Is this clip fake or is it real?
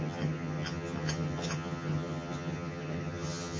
fake